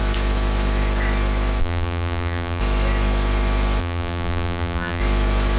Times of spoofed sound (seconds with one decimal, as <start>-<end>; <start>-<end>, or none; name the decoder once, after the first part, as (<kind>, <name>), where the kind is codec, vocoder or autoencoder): 1.6-2.6 (vocoder, BigVGAN v2); 3.8-5.0